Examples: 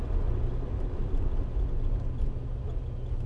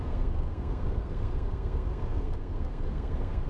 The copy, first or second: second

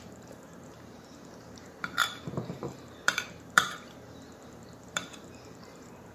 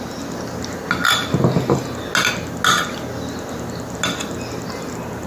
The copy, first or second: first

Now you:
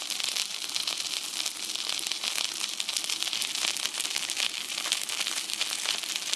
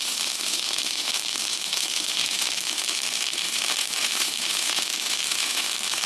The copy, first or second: second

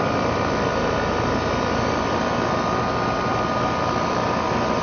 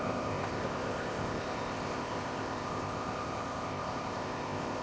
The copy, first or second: second